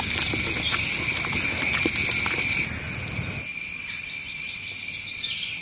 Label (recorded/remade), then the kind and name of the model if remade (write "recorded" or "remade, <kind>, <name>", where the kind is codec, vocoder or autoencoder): recorded